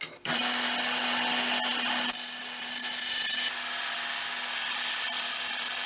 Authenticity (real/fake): real